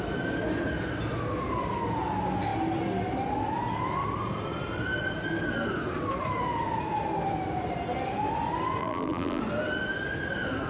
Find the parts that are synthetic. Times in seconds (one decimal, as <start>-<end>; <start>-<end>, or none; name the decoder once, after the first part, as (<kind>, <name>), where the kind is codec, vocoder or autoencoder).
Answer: 8.8-9.4 (vocoder, BigVGAN v2)